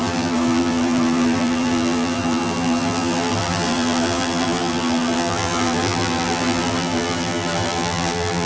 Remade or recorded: remade